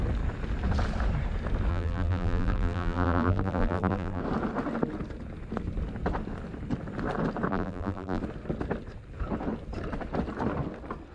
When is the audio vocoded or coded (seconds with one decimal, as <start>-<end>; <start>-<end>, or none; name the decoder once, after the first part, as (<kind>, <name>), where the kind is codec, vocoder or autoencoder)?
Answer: 1.7-4.2 (vocoder, BigVGAN v2); 7.5-8.2